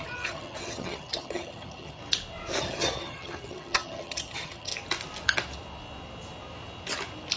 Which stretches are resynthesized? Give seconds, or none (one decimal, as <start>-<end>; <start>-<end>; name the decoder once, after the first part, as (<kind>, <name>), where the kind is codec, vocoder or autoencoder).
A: 0.0-2.0 (vocoder, HiFi-GAN); 2.6-4.7